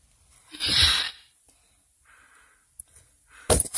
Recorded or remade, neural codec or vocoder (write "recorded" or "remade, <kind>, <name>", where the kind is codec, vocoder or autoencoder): recorded